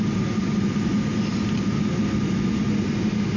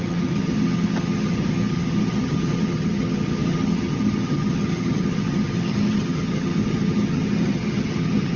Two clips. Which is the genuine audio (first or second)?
first